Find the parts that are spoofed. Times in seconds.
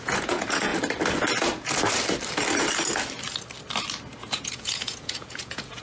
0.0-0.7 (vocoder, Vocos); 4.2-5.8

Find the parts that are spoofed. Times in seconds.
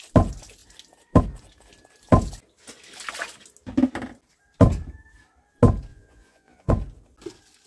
5.9-6.7 (vocoder, Vocos)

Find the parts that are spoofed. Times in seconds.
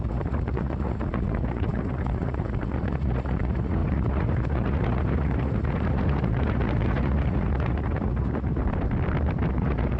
0.0-8.6 (vocoder, Vocos); 9.5-10.0